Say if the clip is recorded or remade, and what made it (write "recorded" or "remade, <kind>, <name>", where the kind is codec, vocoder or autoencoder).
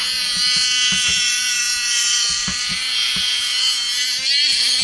remade, vocoder, Vocos